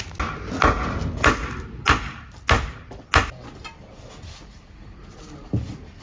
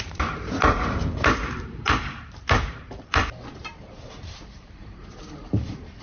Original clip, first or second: first